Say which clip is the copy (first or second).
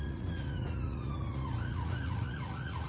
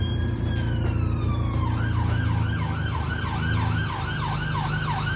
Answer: first